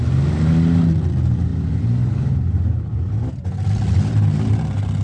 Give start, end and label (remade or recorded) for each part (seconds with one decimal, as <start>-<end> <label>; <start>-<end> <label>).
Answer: 0.0-5.0 recorded